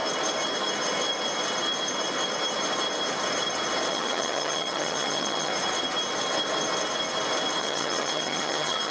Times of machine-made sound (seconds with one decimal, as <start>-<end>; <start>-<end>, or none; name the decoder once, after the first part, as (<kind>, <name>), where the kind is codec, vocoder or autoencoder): 3.9-5.5 (vocoder, HiFi-GAN); 7.6-8.9